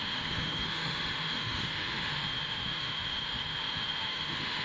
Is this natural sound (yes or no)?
no